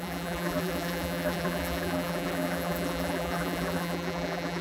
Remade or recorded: remade